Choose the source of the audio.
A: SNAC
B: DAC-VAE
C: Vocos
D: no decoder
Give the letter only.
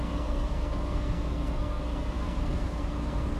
A